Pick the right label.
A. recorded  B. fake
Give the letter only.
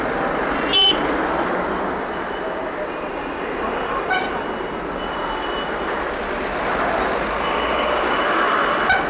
A